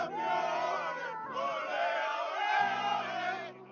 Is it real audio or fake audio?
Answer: real